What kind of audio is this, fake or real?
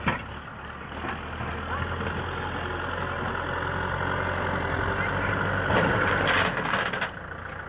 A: real